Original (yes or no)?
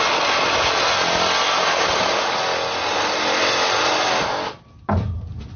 yes